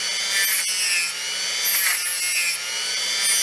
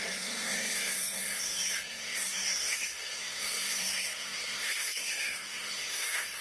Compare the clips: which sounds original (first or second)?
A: first